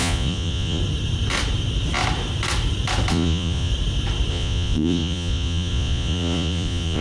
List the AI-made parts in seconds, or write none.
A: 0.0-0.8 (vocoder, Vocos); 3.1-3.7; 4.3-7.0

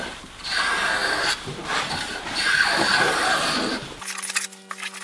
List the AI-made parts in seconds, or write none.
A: 1.0-4.0 (vocoder, BigVGAN v2)

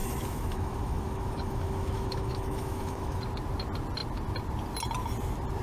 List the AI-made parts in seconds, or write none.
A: 0.0-3.2 (autoencoder, DAC-VAE)

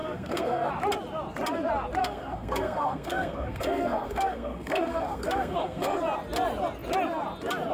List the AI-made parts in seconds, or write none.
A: 0.0-0.7 (codec, SNAC); 2.0-6.0

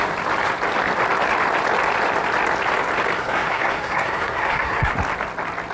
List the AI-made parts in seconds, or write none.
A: 3.2-4.9 (codec, SNAC)

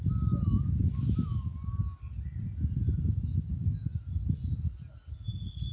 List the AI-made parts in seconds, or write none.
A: none

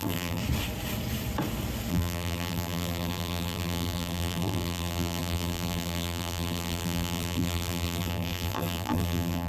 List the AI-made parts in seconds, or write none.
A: 0.0-0.4 (vocoder, BigVGAN v2); 1.9-9.5

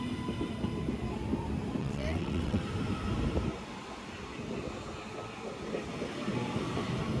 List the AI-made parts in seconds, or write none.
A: 1.8-2.6 (vocoder, WaveNeXt)